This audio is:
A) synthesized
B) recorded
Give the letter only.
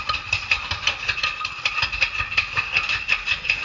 B